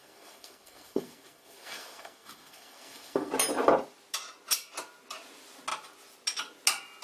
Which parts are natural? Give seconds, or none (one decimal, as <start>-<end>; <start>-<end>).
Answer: 3.3-7.0